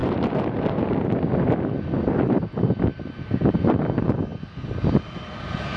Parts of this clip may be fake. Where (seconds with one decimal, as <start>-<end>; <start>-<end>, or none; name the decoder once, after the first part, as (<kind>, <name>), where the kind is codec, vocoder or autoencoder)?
none